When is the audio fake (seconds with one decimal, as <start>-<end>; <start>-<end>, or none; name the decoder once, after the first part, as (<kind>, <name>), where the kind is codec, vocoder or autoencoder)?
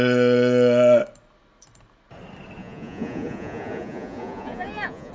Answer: 2.6-5.1 (vocoder, Vocos)